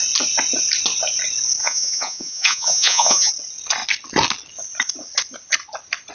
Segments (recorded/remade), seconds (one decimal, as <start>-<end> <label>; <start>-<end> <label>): 0.0-1.6 recorded; 1.6-3.3 remade; 3.3-6.1 recorded

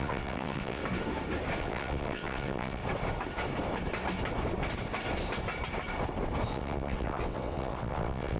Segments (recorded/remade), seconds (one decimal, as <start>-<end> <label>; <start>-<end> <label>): 0.0-0.8 remade; 0.8-1.6 recorded; 1.6-2.8 remade; 2.8-6.5 recorded; 6.5-8.4 remade

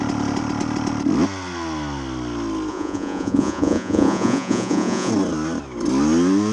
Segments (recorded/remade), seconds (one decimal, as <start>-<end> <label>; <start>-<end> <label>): 0.0-2.7 recorded; 2.7-5.1 remade; 5.1-6.5 recorded

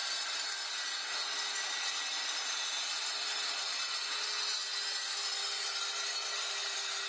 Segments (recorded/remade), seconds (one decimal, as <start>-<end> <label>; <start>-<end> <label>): 0.0-7.1 recorded